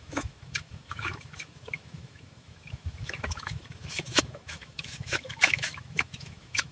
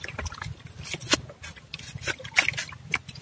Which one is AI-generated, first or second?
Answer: first